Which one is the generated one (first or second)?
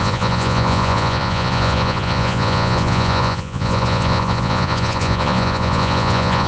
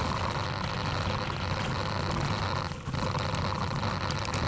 first